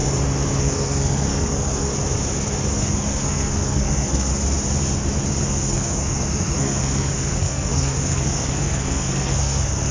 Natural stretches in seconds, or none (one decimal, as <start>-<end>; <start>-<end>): 0.0-0.6; 1.9-2.7; 4.3-5.4